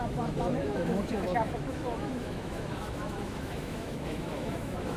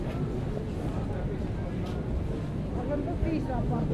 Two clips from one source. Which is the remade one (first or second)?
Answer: first